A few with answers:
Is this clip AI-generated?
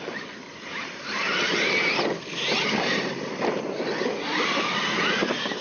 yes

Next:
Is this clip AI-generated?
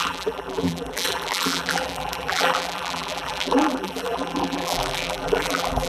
yes